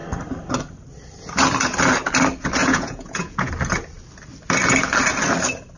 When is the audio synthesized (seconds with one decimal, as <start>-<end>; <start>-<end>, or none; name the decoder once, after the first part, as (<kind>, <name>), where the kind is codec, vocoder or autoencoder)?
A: 2.6-3.5 (vocoder, Vocos)